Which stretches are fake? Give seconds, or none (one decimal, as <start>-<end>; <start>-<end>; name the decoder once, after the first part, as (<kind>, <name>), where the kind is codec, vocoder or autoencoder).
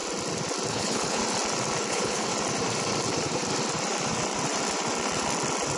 0.7-1.2 (codec, HILCodec); 1.9-2.3